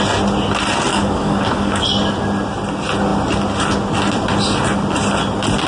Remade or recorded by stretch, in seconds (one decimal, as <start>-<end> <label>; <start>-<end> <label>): 0.0-0.9 recorded; 0.9-1.8 remade; 1.8-5.7 recorded